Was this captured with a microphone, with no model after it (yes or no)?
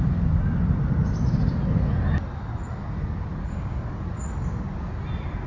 yes